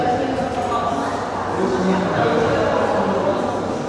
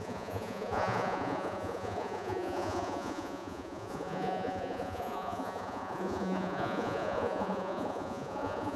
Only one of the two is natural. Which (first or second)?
first